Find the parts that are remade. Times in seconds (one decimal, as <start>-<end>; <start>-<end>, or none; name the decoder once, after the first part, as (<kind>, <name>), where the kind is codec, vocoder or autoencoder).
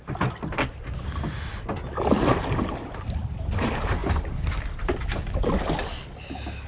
none